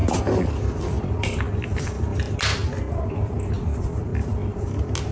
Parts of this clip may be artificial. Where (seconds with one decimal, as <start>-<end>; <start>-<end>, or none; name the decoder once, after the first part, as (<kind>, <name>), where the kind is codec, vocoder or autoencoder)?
none